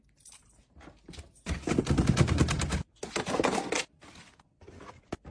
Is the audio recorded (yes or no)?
yes